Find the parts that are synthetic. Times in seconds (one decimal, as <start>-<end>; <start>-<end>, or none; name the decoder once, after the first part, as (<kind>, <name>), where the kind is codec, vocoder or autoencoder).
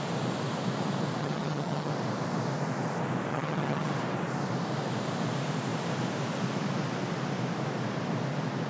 1.2-1.9 (vocoder, HiFi-GAN); 3.3-3.9